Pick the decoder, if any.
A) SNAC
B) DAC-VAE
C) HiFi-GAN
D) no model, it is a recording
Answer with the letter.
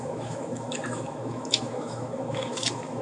B